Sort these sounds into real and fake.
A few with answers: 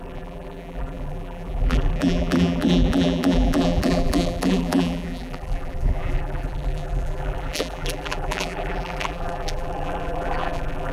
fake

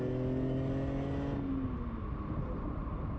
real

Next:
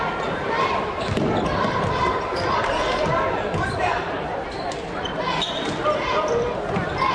fake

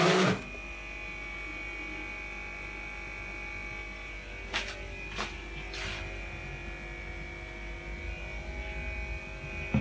real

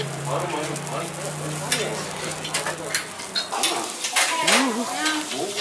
real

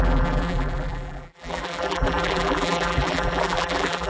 fake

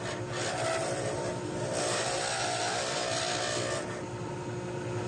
real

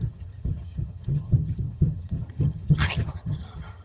fake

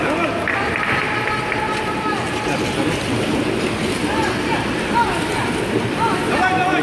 real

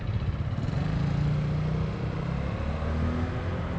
real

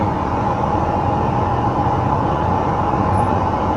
fake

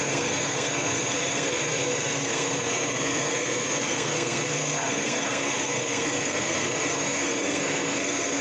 fake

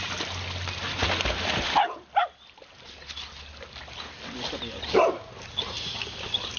real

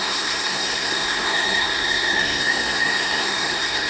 fake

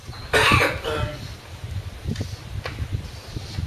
real